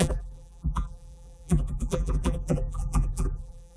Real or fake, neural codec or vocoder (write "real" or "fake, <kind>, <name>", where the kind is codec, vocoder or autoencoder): fake, vocoder, BigVGAN v2